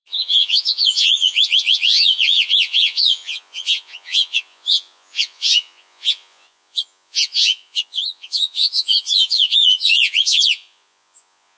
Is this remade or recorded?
remade